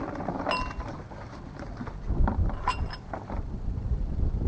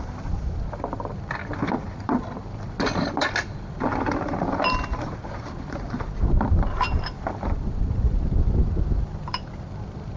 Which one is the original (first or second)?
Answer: first